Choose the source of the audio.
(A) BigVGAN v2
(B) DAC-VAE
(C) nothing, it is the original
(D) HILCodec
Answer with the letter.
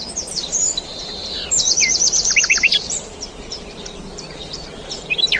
A